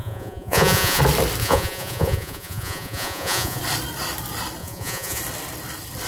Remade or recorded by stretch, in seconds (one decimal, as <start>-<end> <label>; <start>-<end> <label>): 0.0-1.0 remade; 1.0-1.4 recorded; 1.4-3.6 remade; 3.6-4.6 recorded; 4.6-5.2 remade; 5.2-6.1 recorded